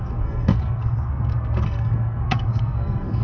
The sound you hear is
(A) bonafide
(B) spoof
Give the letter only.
B